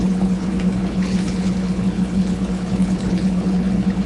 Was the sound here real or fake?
fake